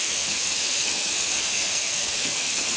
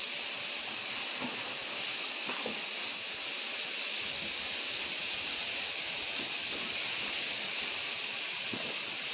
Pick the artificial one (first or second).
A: first